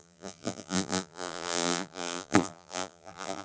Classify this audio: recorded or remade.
remade